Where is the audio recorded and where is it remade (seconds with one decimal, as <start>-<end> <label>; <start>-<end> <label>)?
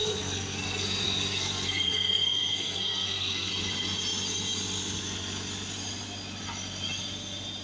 0.0-3.5 remade; 3.5-7.6 recorded